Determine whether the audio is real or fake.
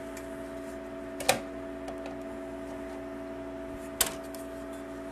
real